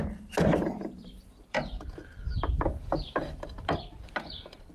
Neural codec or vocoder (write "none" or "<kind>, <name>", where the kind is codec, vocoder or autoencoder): vocoder, BigVGAN v2